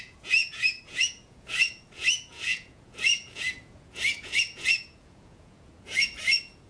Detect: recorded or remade remade